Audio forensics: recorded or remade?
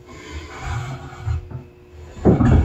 recorded